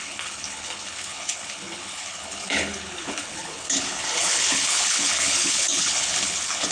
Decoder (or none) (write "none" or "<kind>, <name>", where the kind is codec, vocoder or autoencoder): codec, HILCodec